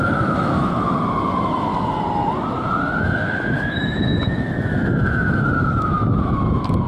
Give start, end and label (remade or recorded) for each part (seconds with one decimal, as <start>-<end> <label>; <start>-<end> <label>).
0.0-1.7 remade; 1.7-3.0 recorded; 3.0-6.9 remade